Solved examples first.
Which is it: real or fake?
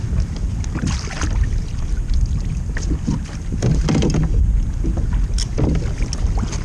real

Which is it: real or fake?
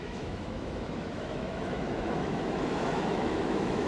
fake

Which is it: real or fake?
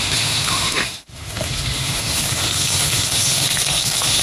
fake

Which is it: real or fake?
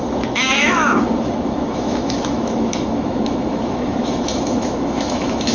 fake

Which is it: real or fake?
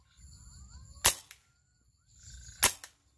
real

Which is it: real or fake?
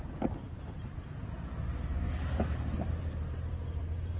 real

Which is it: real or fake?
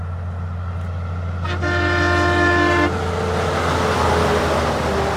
real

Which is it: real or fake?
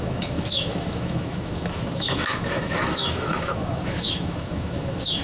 fake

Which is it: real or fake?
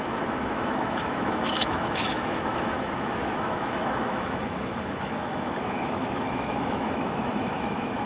fake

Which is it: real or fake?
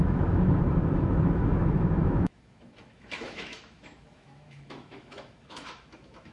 fake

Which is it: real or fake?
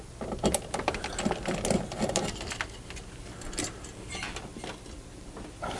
real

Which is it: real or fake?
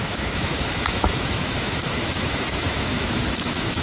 fake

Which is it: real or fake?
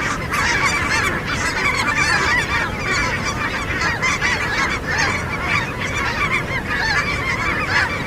real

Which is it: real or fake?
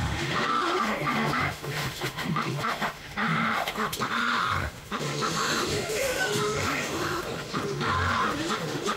fake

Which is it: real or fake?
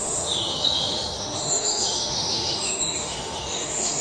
fake